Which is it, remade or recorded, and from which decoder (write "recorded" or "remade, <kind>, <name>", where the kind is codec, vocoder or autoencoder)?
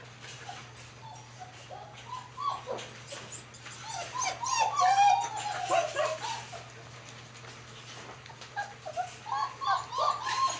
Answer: recorded